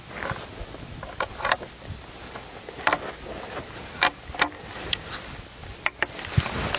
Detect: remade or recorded recorded